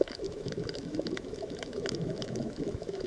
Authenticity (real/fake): fake